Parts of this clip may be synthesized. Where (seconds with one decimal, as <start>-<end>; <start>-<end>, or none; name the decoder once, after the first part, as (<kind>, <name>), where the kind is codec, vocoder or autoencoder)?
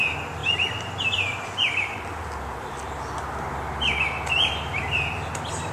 none